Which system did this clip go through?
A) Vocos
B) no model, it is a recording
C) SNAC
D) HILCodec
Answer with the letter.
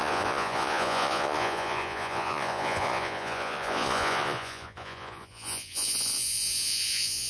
A